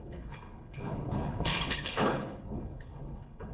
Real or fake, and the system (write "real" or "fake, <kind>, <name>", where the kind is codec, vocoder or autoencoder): fake, codec, HILCodec